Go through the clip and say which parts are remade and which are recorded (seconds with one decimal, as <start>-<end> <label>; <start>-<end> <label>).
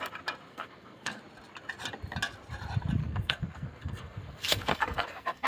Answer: 0.0-0.5 recorded; 0.5-1.2 remade; 1.2-3.0 recorded; 3.0-5.5 remade